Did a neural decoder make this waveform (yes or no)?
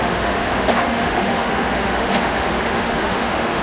yes